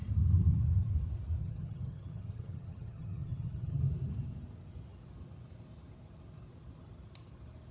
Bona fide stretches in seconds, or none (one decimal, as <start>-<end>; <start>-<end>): 0.0-1.4; 3.8-7.7